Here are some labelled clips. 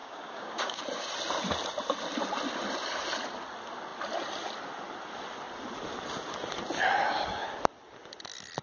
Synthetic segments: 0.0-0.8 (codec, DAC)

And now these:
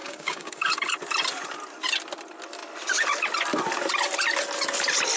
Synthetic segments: 0.0-0.7 (codec, DAC)

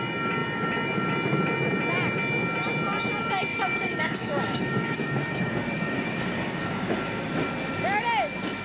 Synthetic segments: 3.5-7.3 (codec, DAC)

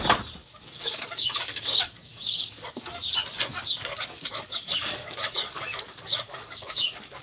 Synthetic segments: 0.4-2.9 (codec, DAC); 3.7-7.2

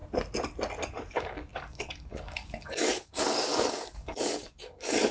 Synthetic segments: 0.8-5.1 (codec, DAC)

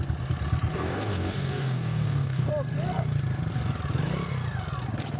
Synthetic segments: 0.7-2.5 (codec, DAC)